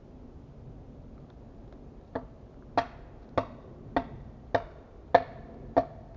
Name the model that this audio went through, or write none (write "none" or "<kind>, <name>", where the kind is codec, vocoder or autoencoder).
none